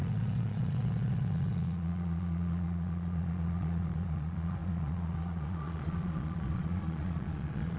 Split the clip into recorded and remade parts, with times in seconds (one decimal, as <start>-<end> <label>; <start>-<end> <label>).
0.0-7.8 remade